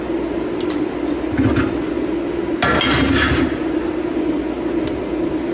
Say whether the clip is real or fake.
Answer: real